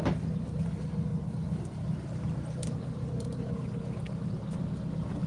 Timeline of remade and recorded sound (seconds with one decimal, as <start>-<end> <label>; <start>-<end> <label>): 0.0-5.3 recorded